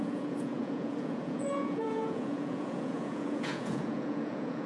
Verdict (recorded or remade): remade